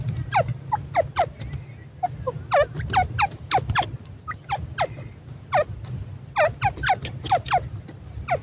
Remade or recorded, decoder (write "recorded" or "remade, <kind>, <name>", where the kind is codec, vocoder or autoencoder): recorded